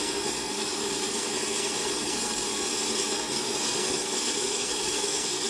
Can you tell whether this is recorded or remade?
remade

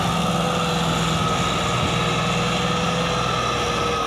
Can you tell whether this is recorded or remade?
recorded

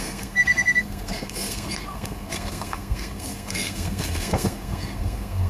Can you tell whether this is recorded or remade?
remade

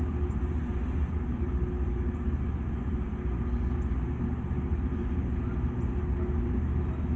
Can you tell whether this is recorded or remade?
recorded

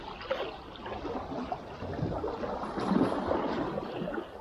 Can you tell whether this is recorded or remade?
recorded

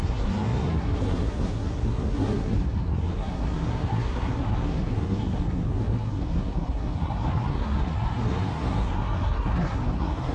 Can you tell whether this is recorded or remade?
remade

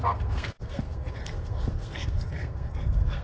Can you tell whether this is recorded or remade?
remade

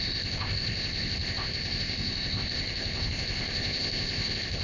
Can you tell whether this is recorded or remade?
remade